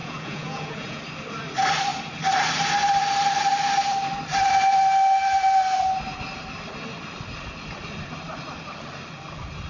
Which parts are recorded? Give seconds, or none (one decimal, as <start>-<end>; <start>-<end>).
1.0-9.7